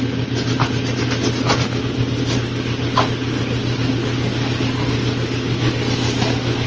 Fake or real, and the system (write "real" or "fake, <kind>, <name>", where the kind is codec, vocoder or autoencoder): real